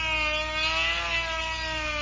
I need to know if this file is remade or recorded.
recorded